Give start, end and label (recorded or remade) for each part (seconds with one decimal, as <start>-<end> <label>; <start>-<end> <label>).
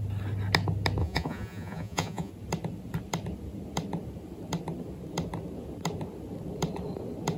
0.0-1.0 recorded; 1.0-2.3 remade; 2.3-7.4 recorded